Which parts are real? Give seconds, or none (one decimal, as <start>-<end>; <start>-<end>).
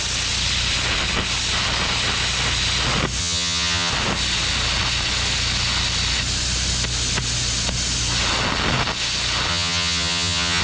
0.0-3.2; 3.9-9.5